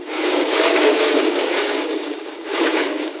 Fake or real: fake